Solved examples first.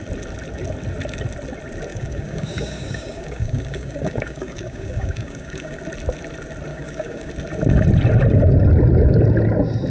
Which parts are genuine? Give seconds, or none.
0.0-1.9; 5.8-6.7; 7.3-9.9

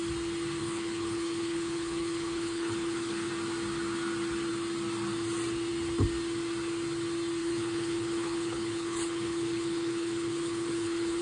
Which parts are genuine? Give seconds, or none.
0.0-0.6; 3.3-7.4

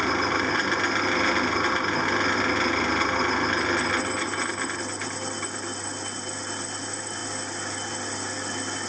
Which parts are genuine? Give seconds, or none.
0.0-8.9

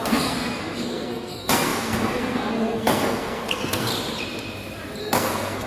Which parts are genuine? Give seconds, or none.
3.9-5.0

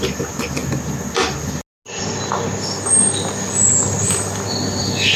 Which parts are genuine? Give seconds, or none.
0.0-5.2

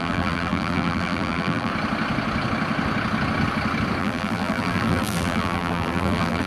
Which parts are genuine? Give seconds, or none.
1.7-4.0

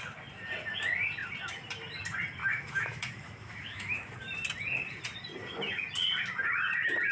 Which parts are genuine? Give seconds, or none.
0.0-2.4; 4.1-7.1